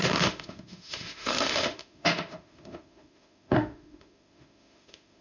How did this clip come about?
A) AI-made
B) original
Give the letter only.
A